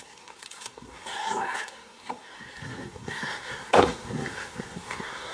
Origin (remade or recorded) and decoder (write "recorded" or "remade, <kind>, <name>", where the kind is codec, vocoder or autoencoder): remade, codec, SNAC